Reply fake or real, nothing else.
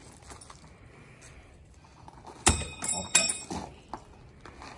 real